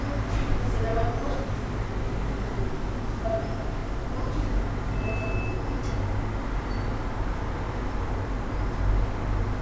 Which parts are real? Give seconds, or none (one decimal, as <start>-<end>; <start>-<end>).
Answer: 0.0-9.6